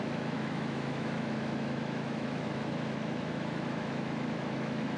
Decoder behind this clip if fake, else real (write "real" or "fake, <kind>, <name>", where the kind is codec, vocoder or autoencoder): fake, autoencoder, DAC-VAE